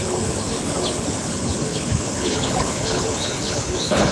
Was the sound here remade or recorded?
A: remade